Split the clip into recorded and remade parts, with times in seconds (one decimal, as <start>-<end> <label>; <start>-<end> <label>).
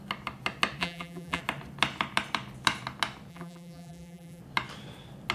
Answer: 0.0-0.8 recorded; 0.8-1.4 remade; 1.4-3.3 recorded; 3.3-4.4 remade; 4.4-5.3 recorded